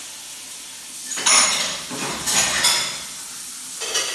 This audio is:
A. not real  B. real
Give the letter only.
B